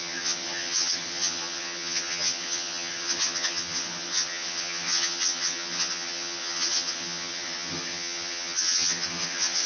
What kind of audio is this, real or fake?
fake